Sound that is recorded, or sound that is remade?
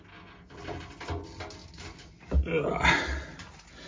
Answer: recorded